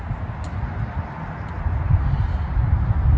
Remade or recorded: recorded